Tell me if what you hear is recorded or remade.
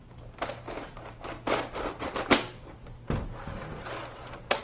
recorded